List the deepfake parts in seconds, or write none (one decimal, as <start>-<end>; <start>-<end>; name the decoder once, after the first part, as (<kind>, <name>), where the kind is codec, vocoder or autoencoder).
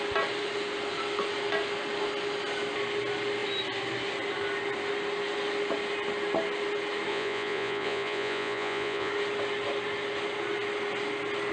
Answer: 7.1-9.1 (vocoder, Vocos)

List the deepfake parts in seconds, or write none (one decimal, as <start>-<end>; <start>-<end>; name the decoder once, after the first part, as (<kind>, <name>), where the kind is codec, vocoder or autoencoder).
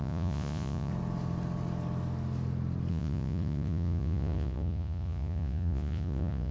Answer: 0.0-0.9 (vocoder, Vocos); 2.9-6.5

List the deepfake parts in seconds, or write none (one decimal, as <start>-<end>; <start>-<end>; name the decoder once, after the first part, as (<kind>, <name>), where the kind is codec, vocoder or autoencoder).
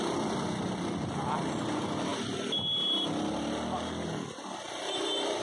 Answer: none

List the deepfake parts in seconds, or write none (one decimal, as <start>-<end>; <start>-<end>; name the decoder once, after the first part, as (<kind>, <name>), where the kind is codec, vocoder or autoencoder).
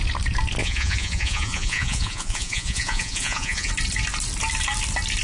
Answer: 0.6-3.7 (vocoder, Vocos)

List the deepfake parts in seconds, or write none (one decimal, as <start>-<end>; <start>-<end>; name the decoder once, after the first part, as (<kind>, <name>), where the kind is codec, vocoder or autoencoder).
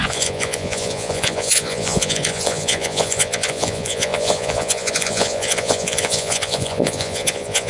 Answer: 0.0-7.7 (vocoder, Vocos)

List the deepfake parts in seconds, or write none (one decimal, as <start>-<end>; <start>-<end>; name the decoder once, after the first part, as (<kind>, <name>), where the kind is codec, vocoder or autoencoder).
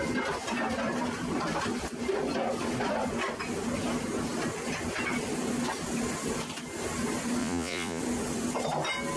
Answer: 7.4-8.0 (vocoder, Vocos)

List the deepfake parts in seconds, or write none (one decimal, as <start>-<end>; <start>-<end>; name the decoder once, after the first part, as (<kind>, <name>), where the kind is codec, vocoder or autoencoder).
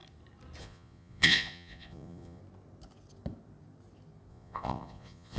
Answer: 0.6-2.4 (vocoder, Vocos); 4.3-5.4